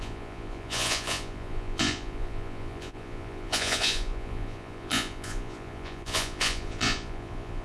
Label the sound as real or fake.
fake